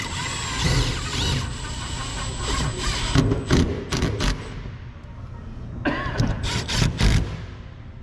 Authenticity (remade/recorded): recorded